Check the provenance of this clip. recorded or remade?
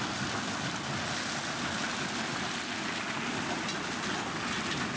recorded